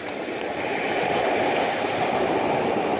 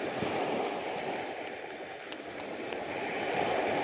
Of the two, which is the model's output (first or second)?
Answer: first